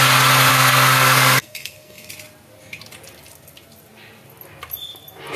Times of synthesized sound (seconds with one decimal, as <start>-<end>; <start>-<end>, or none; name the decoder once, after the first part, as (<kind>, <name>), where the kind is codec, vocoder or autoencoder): 0.5-2.1 (codec, SNAC)